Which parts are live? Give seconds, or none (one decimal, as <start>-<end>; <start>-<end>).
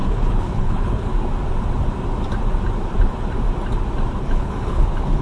1.1-4.2